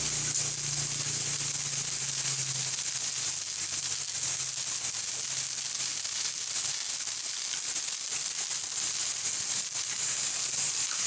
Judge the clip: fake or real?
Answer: real